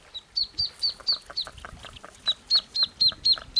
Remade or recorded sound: recorded